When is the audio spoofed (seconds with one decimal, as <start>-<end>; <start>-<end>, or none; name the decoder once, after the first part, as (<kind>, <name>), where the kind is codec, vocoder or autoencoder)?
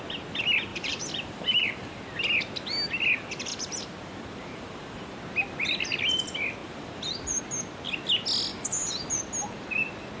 0.7-2.0 (vocoder, BigVGAN v2); 3.5-5.2; 6.6-7.4; 8.5-9.2